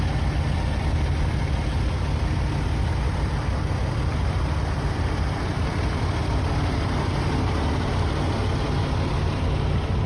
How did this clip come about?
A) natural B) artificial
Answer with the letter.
A